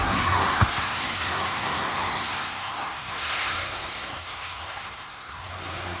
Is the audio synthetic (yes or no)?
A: yes